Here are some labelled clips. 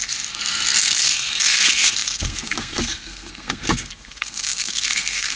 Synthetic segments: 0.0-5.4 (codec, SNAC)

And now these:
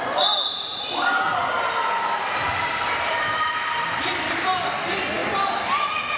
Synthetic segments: 0.7-4.4 (vocoder, BigVGAN v2); 5.2-5.8